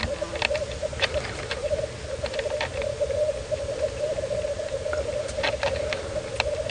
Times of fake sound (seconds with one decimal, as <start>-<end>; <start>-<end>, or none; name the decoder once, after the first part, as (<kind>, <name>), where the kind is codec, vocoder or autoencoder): 0.9-1.8 (vocoder, BigVGAN v2)